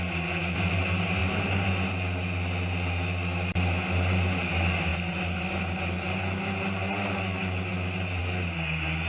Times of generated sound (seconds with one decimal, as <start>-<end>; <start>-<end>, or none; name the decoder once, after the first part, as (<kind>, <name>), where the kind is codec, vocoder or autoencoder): none